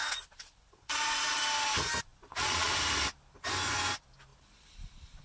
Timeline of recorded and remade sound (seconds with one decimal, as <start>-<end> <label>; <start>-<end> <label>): 0.0-1.4 remade; 1.4-2.1 recorded; 2.1-2.7 remade; 2.7-5.2 recorded